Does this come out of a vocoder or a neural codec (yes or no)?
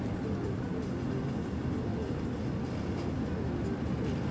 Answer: no